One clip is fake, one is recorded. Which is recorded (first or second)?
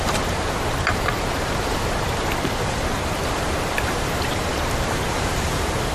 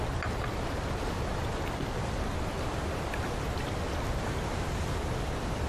second